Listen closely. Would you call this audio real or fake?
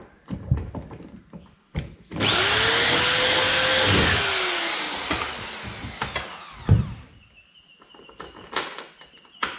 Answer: real